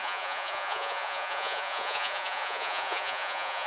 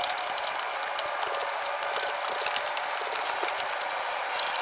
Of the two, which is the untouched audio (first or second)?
second